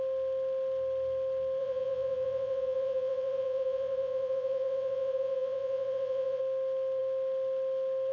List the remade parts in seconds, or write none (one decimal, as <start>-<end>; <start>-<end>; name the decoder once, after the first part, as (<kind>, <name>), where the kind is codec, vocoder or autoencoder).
1.6-6.4 (vocoder, WaveNeXt)